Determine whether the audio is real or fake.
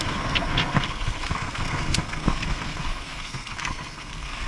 fake